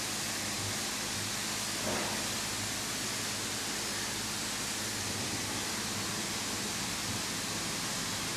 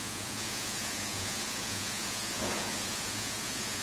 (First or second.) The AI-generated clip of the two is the second